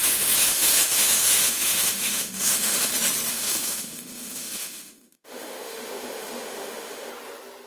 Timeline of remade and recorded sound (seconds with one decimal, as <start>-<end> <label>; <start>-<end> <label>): 0.0-2.9 remade; 2.9-3.3 recorded; 3.3-7.1 remade; 7.1-7.7 recorded